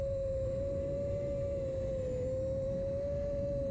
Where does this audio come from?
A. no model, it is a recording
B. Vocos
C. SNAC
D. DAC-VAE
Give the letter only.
A